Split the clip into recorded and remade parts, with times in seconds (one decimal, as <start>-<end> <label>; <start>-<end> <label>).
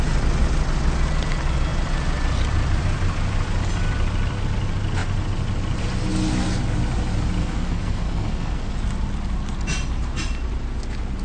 0.0-7.4 recorded; 7.4-8.7 remade; 8.7-11.2 recorded